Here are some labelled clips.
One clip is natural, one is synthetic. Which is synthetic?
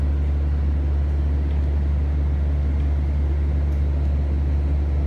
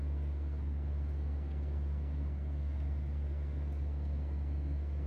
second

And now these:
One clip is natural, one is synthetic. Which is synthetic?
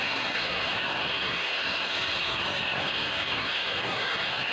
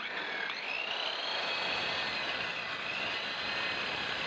first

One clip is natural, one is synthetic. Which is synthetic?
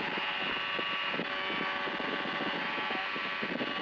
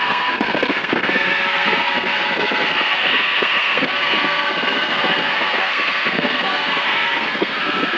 second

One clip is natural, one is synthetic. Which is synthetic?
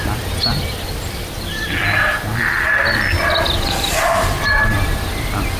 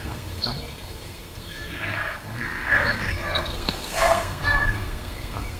second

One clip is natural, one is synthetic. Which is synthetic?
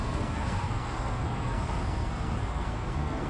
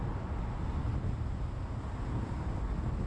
first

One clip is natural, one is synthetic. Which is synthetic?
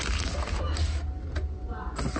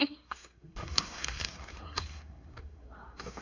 second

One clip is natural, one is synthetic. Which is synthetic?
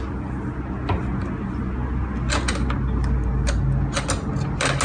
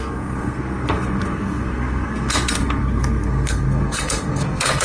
second